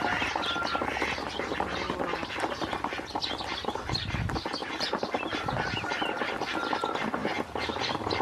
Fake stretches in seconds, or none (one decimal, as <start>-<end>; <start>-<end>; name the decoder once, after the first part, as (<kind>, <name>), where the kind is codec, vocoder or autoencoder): none